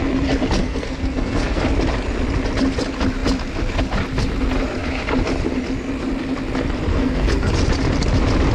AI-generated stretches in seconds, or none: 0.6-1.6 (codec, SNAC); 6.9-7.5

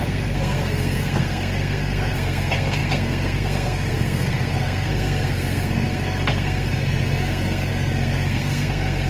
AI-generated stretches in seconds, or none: 0.0-9.1 (codec, SNAC)

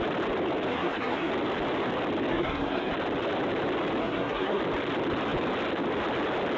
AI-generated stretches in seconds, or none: 0.7-1.3 (codec, SNAC); 2.3-2.9; 4.0-4.6

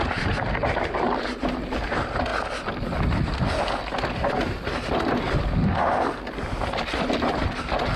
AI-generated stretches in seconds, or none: none

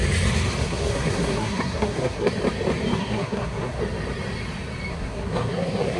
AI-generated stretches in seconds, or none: 0.6-2.3 (codec, SNAC); 3.0-3.8; 4.9-6.0

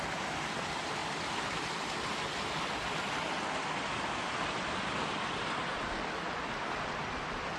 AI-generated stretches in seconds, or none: none

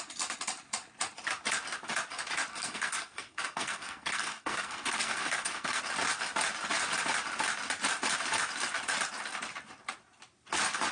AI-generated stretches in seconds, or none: 2.5-5.8 (codec, SNAC)